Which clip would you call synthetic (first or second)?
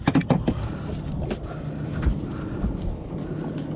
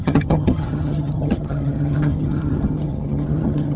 second